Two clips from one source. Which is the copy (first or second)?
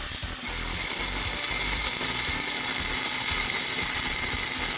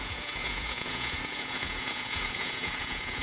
second